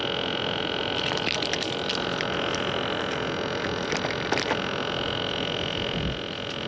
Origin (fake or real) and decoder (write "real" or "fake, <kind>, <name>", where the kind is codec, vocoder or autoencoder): real